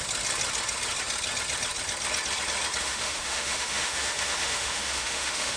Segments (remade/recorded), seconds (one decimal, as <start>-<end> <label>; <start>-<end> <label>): 0.0-2.8 recorded; 2.8-5.6 remade